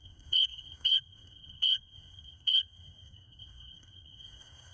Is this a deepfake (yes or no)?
yes